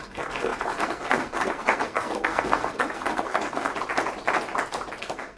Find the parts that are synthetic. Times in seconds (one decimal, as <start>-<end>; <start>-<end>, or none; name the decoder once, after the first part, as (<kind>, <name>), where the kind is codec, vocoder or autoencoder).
0.0-3.7 (codec, SNAC); 5.0-5.4